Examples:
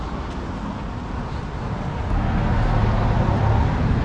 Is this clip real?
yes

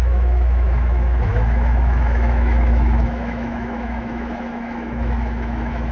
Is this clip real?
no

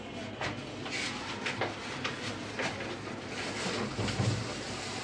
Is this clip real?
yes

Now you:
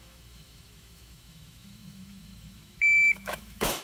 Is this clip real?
no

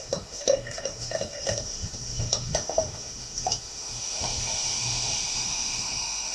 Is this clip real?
no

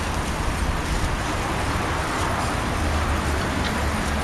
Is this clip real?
yes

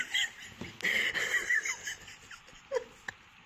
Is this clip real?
yes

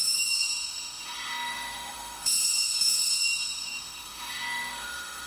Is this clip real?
no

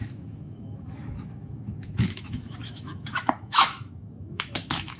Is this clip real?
no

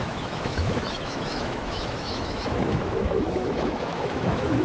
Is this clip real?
no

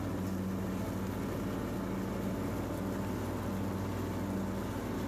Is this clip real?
yes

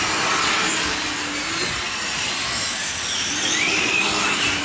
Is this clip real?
yes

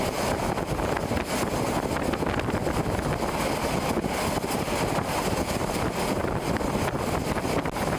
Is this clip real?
yes